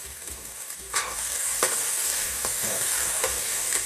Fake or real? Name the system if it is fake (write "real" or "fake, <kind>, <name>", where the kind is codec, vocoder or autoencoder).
fake, codec, DAC